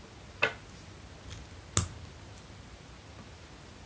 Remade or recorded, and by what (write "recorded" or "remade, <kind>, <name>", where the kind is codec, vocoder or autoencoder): recorded